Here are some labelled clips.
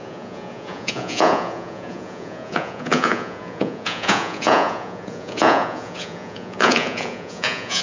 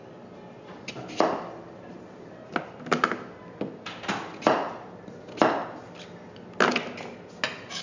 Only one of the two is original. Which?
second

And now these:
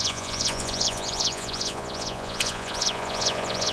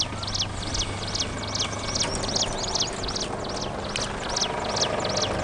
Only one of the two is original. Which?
second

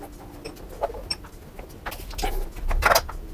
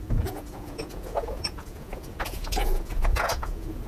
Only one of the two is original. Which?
first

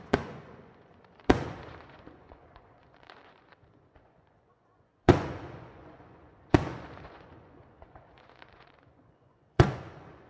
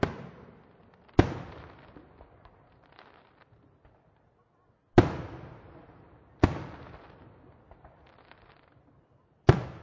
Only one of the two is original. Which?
second